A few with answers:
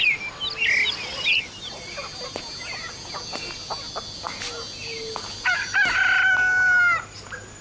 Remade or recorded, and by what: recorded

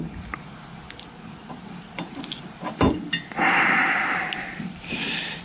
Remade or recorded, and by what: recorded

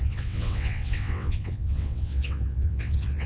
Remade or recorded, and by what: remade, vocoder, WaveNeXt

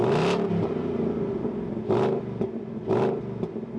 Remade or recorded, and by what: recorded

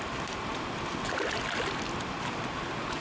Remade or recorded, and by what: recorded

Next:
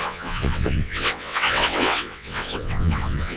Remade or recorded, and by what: remade, vocoder, WaveNeXt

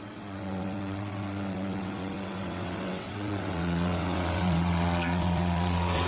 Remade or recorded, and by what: remade, vocoder, WaveNeXt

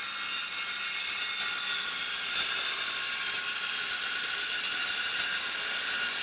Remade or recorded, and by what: recorded